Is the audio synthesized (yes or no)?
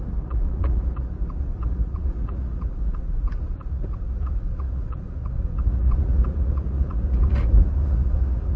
yes